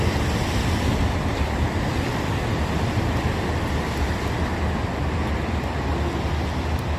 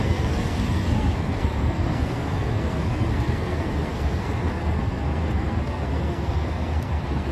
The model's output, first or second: second